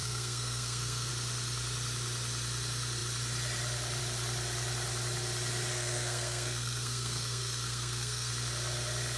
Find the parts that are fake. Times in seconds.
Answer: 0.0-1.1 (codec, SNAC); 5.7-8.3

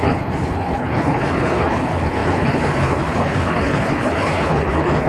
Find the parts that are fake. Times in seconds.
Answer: 0.0-5.1 (codec, HILCodec)

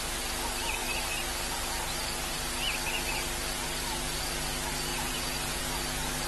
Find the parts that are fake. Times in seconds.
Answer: 4.9-5.6 (vocoder, Vocos)

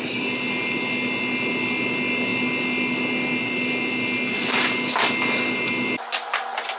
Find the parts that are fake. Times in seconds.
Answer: none

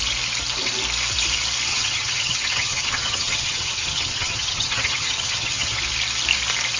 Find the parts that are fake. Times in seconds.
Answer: 1.7-5.8 (vocoder, HiFi-GAN)

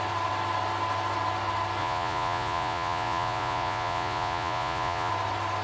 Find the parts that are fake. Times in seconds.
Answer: 1.8-5.1 (vocoder, Vocos)